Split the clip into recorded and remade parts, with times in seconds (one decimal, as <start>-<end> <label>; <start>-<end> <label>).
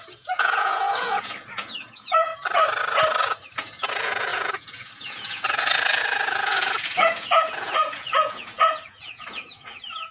0.0-2.3 remade; 2.3-3.2 recorded; 3.2-10.1 remade